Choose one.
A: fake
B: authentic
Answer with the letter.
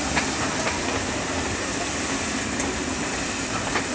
B